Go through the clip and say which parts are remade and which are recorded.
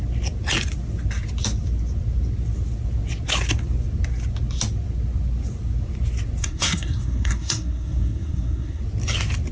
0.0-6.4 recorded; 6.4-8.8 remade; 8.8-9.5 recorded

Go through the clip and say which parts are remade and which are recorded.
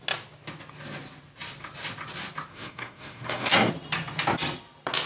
0.0-2.5 recorded; 2.5-3.7 remade; 3.7-5.1 recorded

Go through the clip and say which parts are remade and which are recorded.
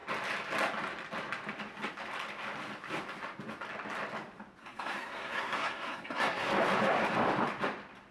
0.0-4.6 recorded; 4.6-6.5 remade; 6.5-8.1 recorded